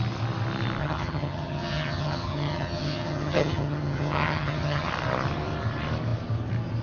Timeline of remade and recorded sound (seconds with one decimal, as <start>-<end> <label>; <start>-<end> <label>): 0.0-0.8 recorded; 0.8-4.9 remade; 4.9-6.8 recorded